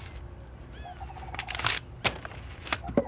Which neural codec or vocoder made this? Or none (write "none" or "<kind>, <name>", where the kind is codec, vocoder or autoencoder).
none